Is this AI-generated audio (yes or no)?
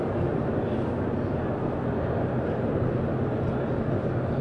no